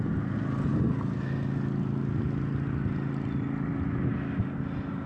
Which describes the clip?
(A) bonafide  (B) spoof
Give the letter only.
A